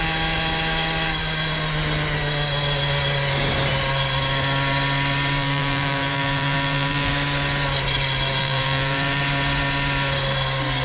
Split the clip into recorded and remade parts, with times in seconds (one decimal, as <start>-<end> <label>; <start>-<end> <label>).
0.0-5.4 recorded; 5.4-7.1 remade; 7.1-8.4 recorded; 8.4-9.2 remade; 9.2-10.8 recorded